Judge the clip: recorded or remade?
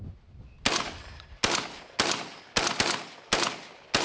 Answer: recorded